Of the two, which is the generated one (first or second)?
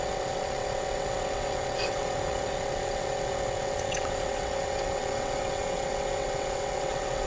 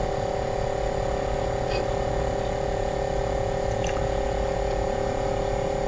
first